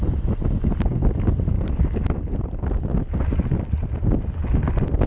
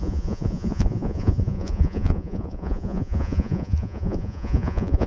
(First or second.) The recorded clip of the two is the first